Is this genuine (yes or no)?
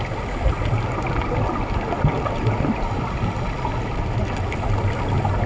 yes